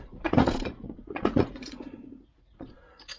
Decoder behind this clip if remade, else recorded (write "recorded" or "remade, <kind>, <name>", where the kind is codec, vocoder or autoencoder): remade, vocoder, Vocos